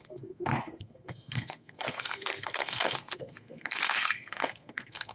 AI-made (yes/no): yes